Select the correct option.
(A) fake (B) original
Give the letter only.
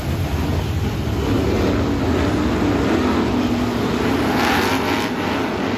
B